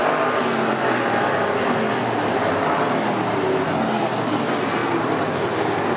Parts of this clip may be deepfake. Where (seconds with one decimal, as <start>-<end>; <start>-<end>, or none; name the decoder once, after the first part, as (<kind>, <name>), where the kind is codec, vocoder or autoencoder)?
none